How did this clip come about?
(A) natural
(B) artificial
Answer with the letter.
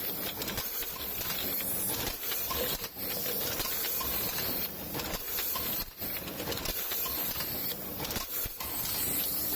A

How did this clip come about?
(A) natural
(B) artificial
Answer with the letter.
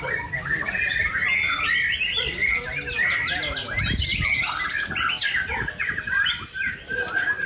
A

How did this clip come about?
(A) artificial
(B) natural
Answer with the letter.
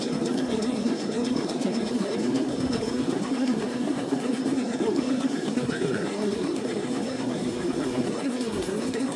A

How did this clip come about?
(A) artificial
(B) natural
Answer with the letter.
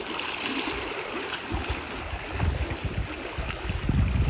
B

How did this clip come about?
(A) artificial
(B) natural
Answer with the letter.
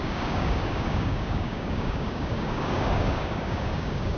A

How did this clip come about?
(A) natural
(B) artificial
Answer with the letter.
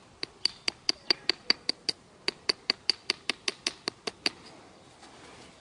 A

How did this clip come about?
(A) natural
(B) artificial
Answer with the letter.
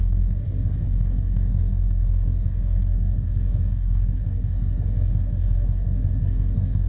B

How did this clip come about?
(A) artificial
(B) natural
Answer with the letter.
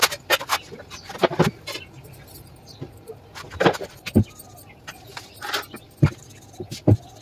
B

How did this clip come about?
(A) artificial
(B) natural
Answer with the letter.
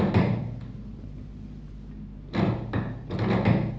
B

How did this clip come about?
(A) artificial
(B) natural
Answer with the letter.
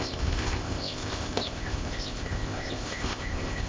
A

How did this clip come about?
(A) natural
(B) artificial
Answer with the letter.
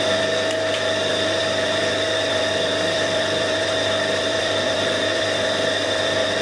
B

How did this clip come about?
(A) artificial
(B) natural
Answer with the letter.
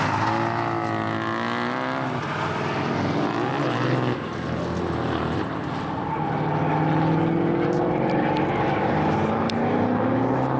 B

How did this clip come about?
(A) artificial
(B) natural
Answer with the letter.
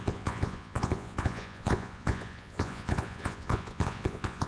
A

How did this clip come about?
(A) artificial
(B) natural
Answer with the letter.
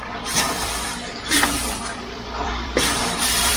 A